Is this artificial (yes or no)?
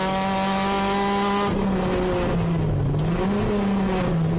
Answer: no